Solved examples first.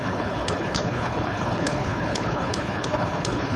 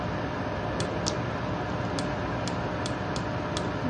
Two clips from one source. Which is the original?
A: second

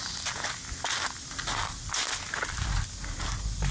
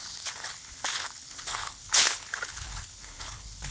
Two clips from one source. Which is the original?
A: first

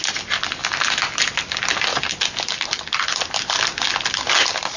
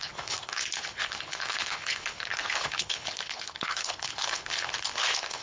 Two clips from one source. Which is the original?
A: first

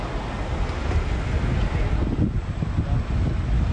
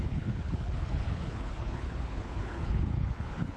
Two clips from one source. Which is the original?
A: first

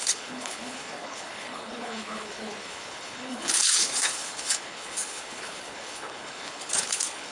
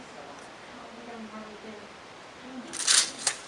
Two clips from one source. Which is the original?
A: second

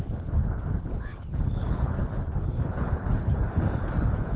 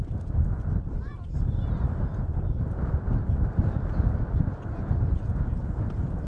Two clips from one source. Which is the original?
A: second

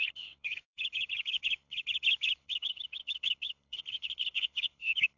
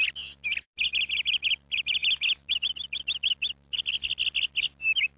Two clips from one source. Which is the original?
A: second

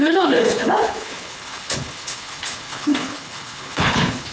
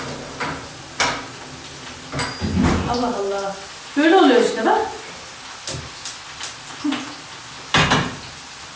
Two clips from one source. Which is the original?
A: second